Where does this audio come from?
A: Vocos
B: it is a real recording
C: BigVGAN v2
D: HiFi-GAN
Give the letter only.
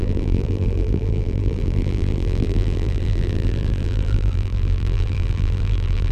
C